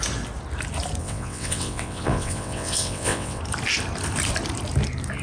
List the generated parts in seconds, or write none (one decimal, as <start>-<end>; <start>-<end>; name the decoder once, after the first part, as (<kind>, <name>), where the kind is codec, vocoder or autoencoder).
1.0-3.4 (vocoder, WaveNeXt)